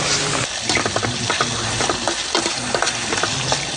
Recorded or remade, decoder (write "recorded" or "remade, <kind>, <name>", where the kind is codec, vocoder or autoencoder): recorded